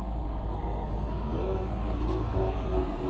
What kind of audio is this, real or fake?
fake